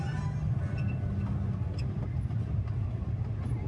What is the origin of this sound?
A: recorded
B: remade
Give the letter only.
A